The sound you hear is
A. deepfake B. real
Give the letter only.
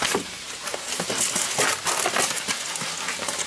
B